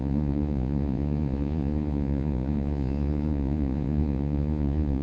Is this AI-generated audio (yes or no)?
yes